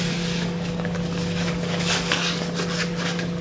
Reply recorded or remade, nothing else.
remade